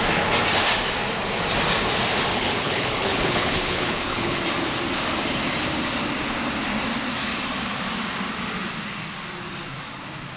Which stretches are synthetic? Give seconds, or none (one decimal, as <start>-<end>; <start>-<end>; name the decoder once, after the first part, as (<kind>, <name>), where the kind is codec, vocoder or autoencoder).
2.3-4.4 (codec, HILCodec)